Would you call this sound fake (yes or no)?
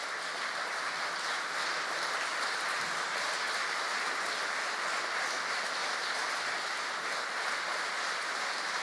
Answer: no